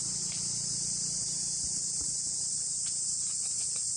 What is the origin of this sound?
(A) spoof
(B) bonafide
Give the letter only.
B